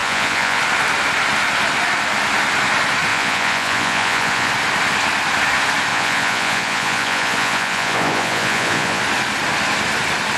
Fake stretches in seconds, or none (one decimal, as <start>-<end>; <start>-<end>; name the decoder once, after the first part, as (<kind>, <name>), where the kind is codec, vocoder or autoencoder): 0.0-0.6 (vocoder, Vocos); 3.1-4.5; 5.9-9.0